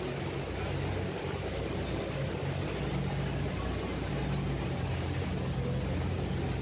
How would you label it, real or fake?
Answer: real